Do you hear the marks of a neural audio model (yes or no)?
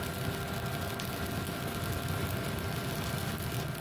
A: no